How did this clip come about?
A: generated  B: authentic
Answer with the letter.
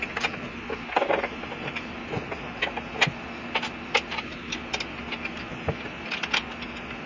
B